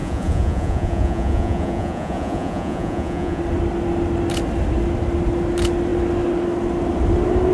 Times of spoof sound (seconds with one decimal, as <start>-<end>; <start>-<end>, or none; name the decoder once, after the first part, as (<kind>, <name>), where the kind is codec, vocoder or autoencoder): 0.0-3.4 (vocoder, Vocos)